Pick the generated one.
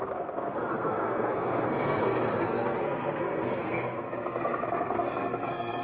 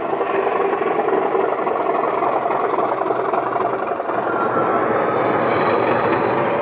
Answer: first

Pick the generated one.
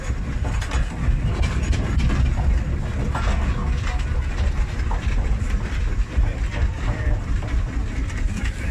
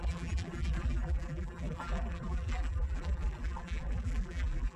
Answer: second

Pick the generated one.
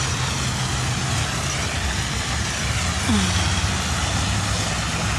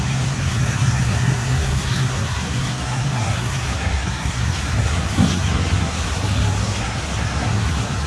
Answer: second